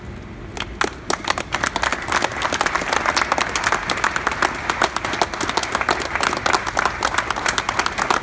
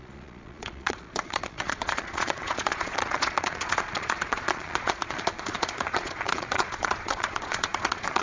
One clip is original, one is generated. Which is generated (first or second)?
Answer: second